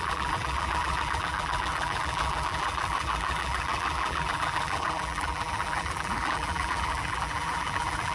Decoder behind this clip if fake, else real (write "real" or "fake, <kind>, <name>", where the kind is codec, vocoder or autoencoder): fake, vocoder, BigVGAN v2